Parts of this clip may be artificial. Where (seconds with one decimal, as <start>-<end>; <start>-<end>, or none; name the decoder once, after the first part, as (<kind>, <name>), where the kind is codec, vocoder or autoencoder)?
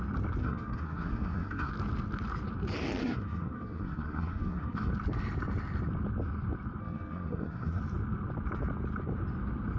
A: 0.4-1.7 (codec, SNAC); 3.0-4.9; 6.8-7.8